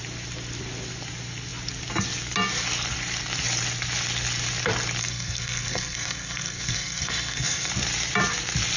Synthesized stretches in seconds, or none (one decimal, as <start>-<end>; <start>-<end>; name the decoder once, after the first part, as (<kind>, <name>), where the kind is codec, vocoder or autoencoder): 5.0-7.7 (codec, SNAC)